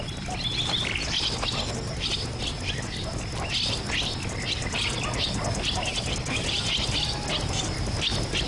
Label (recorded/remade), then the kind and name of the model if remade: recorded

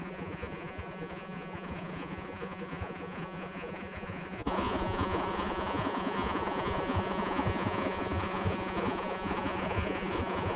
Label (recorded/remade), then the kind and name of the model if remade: remade, vocoder, Vocos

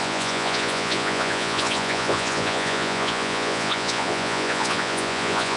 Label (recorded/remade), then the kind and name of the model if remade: remade, vocoder, Vocos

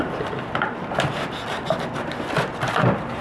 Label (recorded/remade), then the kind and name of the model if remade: recorded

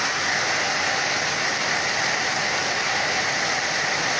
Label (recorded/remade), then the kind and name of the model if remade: recorded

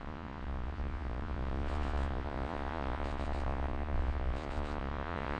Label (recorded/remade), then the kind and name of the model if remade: remade, vocoder, Vocos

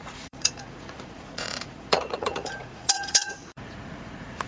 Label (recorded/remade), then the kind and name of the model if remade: remade, vocoder, Vocos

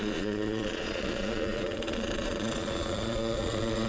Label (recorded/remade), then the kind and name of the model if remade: remade, vocoder, Vocos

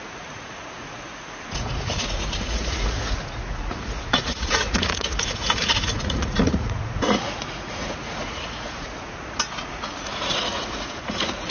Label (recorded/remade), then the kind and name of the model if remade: remade, vocoder, Vocos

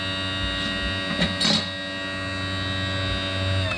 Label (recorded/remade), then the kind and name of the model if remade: recorded